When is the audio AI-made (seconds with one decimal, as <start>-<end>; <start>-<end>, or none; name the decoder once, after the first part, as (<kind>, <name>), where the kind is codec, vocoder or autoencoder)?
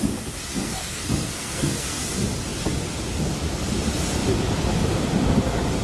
0.5-2.0 (codec, SNAC)